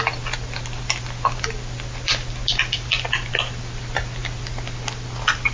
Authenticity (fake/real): real